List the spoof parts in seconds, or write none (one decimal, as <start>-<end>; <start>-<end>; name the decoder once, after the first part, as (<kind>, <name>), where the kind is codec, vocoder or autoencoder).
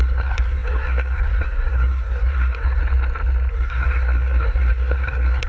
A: 0.0-2.8 (codec, SNAC); 3.5-5.5